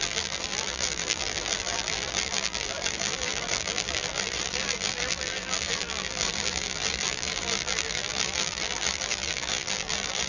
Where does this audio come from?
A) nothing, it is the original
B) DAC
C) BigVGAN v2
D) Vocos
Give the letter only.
C